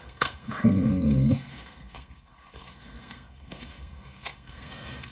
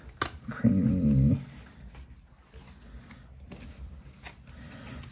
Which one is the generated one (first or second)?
first